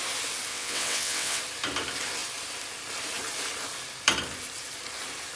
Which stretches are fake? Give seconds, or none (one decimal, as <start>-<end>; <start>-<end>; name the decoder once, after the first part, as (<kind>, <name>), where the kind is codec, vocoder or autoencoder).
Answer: 0.5-1.4 (vocoder, WaveNeXt)

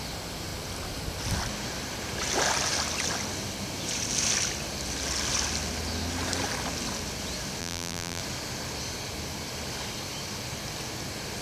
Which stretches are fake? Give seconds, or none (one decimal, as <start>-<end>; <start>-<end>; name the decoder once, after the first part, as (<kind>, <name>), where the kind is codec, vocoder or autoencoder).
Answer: 7.6-8.2 (vocoder, BigVGAN v2)

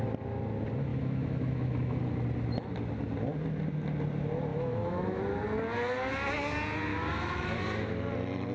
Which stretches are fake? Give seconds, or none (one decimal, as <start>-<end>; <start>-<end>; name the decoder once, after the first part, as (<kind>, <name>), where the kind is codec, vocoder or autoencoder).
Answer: 0.9-2.0 (autoencoder, DAC-VAE); 4.5-5.2; 6.9-7.6

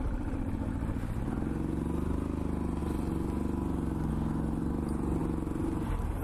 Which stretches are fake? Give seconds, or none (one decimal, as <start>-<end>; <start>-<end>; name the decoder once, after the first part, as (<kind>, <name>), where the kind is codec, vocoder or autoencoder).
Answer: none